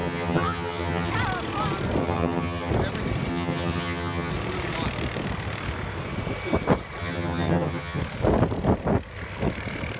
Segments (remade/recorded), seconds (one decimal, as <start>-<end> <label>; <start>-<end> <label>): 0.0-1.1 remade; 1.1-2.0 recorded; 2.0-2.7 remade; 2.7-3.3 recorded; 3.3-4.3 remade; 4.3-7.0 recorded; 7.0-8.0 remade; 8.0-10.0 recorded